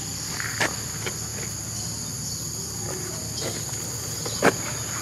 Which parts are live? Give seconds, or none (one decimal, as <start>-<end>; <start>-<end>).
0.0-5.0